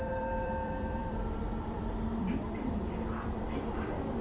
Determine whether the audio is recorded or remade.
remade